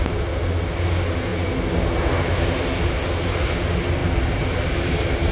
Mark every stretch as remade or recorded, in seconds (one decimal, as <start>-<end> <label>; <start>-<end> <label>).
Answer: 0.0-5.3 recorded